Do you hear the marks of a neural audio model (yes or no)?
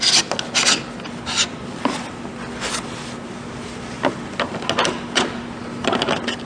no